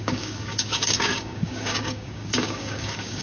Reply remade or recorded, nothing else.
remade